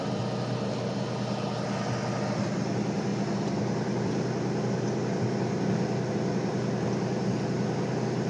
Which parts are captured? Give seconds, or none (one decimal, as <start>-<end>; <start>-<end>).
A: 0.0-8.3